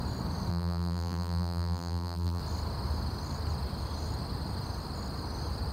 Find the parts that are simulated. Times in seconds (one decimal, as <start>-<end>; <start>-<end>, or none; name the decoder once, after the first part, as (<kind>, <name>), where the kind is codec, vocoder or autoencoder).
0.5-2.4 (vocoder, BigVGAN v2)